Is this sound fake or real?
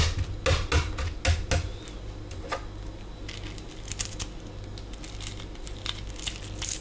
real